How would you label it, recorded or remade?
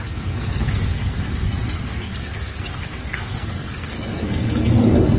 remade